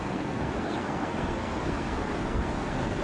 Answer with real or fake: fake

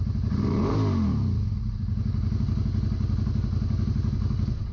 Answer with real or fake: real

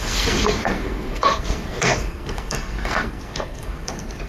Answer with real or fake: fake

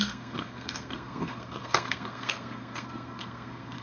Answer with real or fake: fake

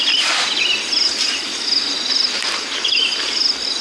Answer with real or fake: real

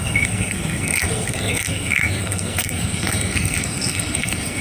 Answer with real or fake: fake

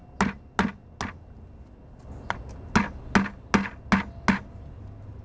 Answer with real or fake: real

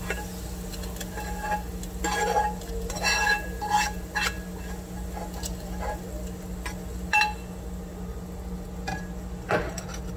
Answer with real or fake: real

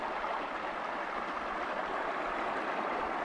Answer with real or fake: real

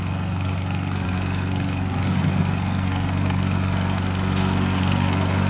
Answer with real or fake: fake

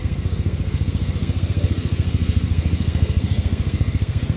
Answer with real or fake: fake